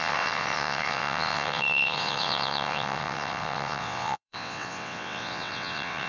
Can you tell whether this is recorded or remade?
remade